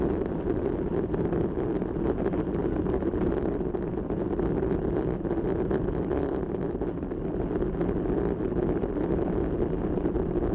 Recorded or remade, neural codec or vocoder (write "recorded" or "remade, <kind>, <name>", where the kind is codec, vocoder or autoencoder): recorded